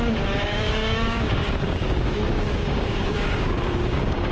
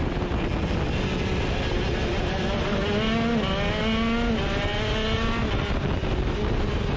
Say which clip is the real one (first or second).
second